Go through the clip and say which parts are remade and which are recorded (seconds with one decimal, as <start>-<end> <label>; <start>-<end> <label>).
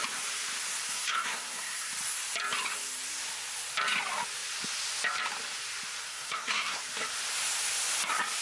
0.0-0.9 recorded; 0.9-1.9 remade; 1.9-6.1 recorded; 6.1-6.8 remade; 6.8-8.4 recorded